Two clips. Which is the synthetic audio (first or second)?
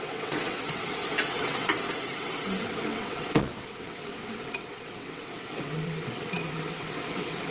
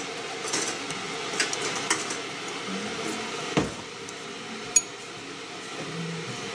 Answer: first